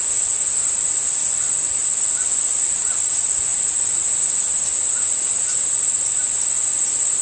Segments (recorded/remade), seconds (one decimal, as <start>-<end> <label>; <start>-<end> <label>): 0.0-7.2 recorded